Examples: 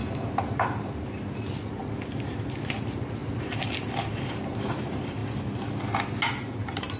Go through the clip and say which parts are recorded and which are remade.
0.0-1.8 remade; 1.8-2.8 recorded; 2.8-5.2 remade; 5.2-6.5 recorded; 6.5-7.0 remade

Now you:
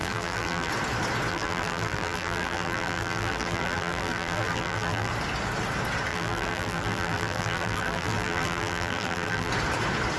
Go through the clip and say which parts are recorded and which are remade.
0.0-0.7 remade; 0.7-1.3 recorded; 1.3-5.1 remade; 5.1-6.1 recorded; 6.1-9.5 remade; 9.5-10.2 recorded

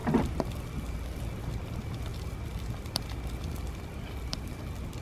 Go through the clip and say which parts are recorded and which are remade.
0.0-1.4 remade; 1.4-2.1 recorded; 2.1-4.6 remade; 4.6-5.0 recorded

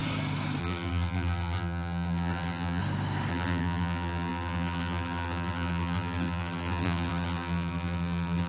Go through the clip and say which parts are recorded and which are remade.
0.0-0.6 recorded; 0.6-2.8 remade; 2.8-3.3 recorded; 3.3-8.5 remade

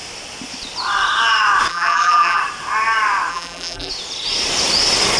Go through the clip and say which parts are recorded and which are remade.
0.0-1.7 recorded; 1.7-2.4 remade; 2.4-3.3 recorded; 3.3-3.9 remade; 3.9-5.2 recorded

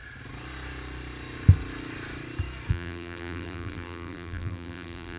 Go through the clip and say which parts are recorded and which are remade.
0.0-2.7 recorded; 2.7-5.2 remade